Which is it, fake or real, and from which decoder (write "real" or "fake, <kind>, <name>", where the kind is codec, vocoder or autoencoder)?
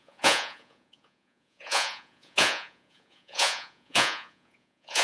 fake, vocoder, Vocos